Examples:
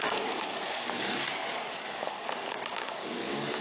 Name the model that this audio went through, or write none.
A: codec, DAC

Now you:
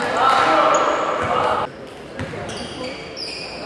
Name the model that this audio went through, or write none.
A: none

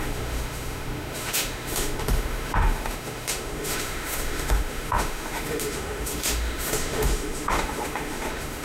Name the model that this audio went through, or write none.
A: autoencoder, DAC-VAE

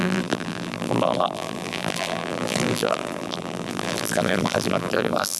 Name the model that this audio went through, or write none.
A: vocoder, BigVGAN v2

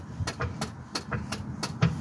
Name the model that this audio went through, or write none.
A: none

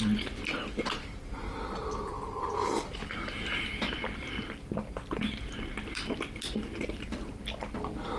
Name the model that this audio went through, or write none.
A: none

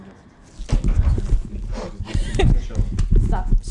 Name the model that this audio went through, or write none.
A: none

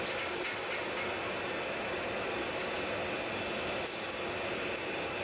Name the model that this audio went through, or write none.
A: none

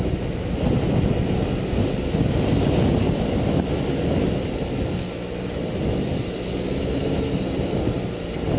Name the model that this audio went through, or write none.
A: none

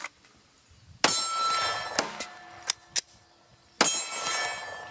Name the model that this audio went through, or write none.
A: none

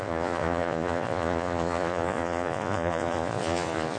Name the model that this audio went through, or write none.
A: vocoder, Vocos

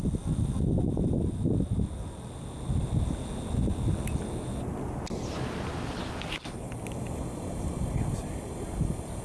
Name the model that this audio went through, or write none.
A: none